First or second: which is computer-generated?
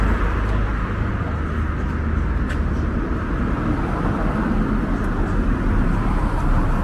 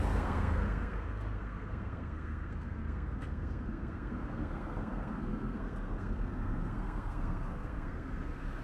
second